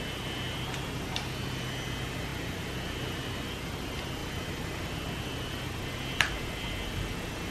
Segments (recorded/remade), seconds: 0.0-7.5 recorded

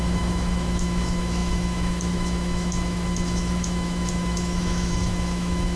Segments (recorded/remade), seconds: 0.0-5.8 remade

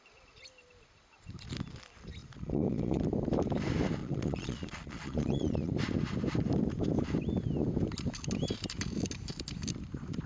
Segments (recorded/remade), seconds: 0.0-2.2 recorded; 2.2-3.0 remade; 3.0-4.0 recorded; 4.0-5.7 remade; 5.7-10.3 recorded

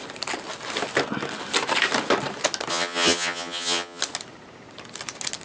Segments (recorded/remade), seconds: 0.0-2.7 recorded; 2.7-4.0 remade; 4.0-5.4 recorded

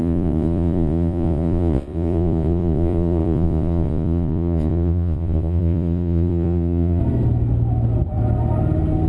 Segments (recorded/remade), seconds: 0.0-7.0 remade; 7.0-9.1 recorded

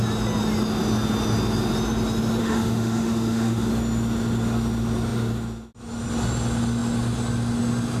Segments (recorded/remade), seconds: 0.0-2.4 recorded; 2.4-3.7 remade; 3.7-8.0 recorded